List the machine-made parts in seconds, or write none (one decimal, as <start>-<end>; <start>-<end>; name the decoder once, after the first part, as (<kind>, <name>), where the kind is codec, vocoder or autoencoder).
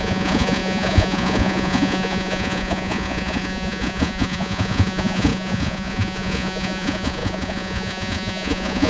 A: 0.0-8.9 (vocoder, Vocos)